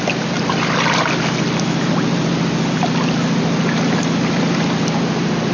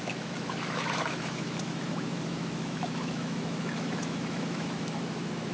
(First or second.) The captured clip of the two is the first